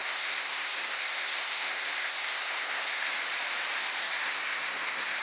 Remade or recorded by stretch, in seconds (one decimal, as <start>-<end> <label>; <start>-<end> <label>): 0.0-3.1 remade; 3.1-4.0 recorded; 4.0-5.2 remade